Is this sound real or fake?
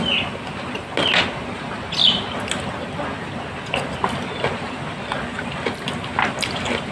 real